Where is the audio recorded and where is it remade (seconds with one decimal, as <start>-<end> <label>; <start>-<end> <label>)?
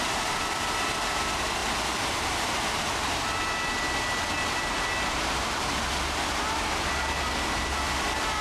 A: 0.0-8.4 recorded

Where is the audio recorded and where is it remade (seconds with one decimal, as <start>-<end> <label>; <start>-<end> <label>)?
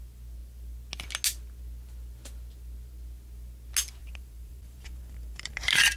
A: 0.0-4.0 recorded; 4.0-5.6 remade; 5.6-6.0 recorded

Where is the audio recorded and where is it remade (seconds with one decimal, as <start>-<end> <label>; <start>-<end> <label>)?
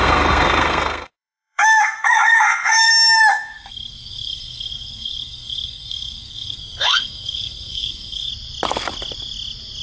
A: 0.0-2.9 remade; 2.9-3.3 recorded; 3.3-8.3 remade; 8.3-9.8 recorded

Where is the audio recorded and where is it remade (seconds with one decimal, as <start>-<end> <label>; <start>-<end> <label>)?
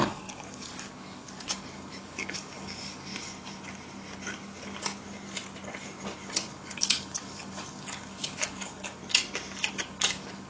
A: 0.0-3.1 remade; 3.1-6.5 recorded; 6.5-9.0 remade; 9.0-9.7 recorded; 9.7-10.5 remade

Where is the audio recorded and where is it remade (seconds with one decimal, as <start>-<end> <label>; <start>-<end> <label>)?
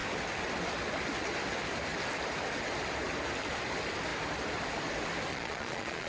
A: 0.0-5.3 recorded; 5.3-6.1 remade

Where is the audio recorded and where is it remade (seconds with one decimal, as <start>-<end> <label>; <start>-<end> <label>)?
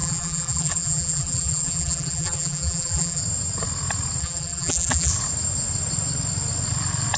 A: 0.0-3.2 remade; 3.2-4.2 recorded; 4.2-5.1 remade; 5.1-7.2 recorded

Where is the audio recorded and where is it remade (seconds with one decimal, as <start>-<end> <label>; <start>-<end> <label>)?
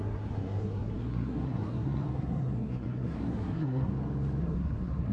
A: 0.0-3.9 remade; 3.9-4.4 recorded; 4.4-5.1 remade